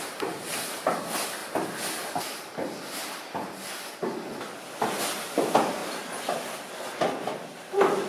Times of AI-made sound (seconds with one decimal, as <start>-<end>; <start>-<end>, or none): none